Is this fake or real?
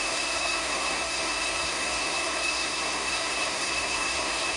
fake